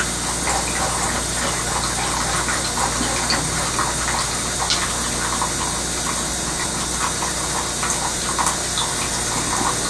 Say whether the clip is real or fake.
real